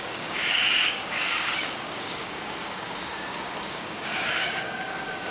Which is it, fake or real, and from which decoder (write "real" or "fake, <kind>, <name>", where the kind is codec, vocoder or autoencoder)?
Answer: fake, codec, DAC